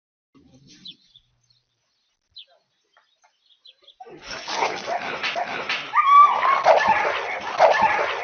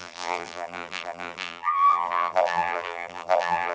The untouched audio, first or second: first